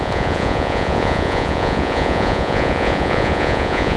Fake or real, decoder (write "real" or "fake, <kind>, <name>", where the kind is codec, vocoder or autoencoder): fake, vocoder, Vocos